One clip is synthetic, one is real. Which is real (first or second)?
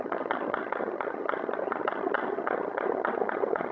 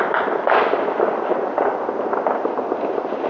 second